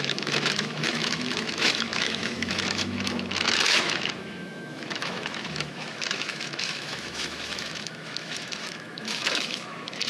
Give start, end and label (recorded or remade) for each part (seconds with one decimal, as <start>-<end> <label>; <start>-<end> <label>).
0.0-10.1 remade